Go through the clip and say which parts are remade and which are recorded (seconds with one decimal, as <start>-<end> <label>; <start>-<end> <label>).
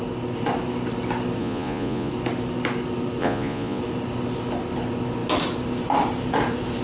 0.0-1.4 recorded; 1.4-2.1 remade; 2.1-3.2 recorded; 3.2-3.8 remade; 3.8-6.8 recorded